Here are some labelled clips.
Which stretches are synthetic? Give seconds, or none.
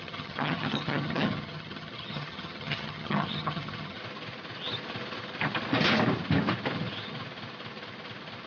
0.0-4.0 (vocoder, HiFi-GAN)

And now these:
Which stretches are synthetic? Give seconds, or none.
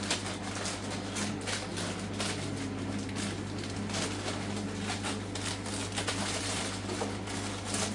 none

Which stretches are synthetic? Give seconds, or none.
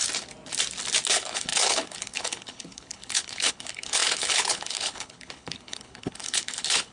1.1-6.9 (codec, HILCodec)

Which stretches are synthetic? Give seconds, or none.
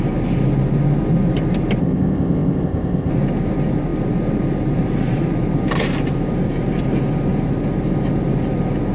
1.8-3.1 (codec, ZipCodec)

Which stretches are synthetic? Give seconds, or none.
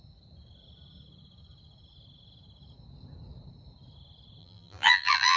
4.4-5.4 (vocoder, BigVGAN v2)